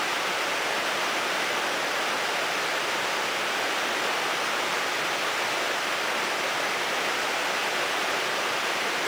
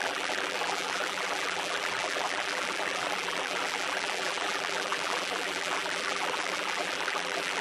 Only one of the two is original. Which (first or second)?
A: first